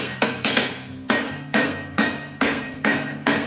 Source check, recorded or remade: remade